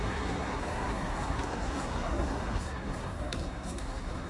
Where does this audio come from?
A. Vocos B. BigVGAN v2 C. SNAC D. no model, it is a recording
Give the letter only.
C